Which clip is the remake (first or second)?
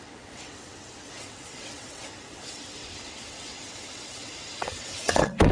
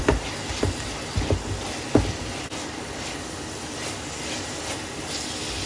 first